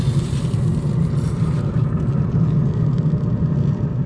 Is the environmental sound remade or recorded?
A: recorded